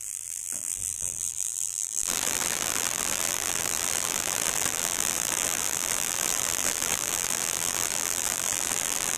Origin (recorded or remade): remade